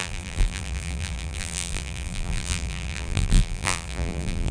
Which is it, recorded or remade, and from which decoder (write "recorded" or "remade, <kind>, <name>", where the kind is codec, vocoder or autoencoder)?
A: remade, vocoder, BigVGAN v2